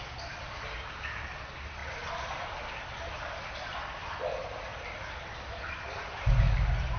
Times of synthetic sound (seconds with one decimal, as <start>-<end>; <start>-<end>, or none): none

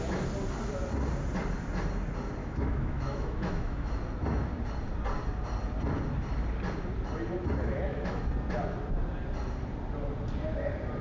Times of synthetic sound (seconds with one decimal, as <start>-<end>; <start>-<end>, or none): 2.4-4.0; 7.6-8.2

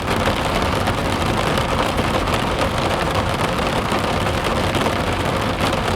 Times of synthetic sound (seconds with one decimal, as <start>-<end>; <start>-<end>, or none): none

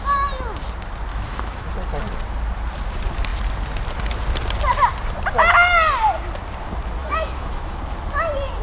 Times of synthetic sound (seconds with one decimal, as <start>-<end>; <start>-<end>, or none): 1.1-1.7; 7.0-7.8

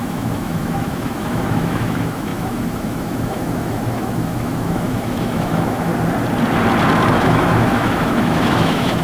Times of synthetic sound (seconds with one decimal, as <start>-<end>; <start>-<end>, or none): 0.0-5.9; 7.1-9.0